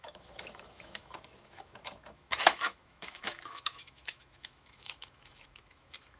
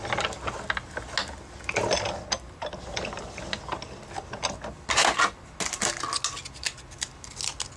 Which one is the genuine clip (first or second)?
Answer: second